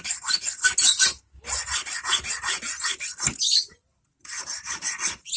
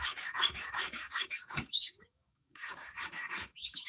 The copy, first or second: second